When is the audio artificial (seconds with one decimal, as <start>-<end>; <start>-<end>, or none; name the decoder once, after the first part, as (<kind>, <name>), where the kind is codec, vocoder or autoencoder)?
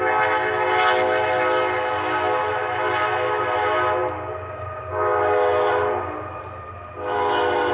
none